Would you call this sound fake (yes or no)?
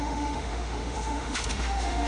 yes